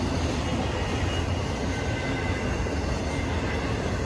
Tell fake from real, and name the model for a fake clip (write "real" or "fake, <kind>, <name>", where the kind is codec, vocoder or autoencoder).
real